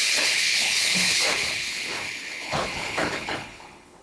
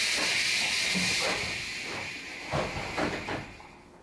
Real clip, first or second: second